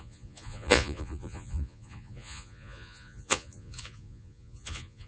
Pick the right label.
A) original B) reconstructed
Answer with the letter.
B